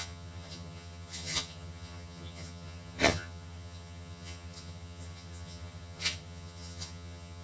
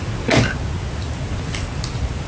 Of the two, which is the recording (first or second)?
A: second